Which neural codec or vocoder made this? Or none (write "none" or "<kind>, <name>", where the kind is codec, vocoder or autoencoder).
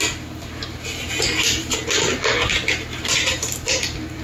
none